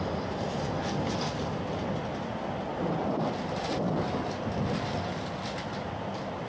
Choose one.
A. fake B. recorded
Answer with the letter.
B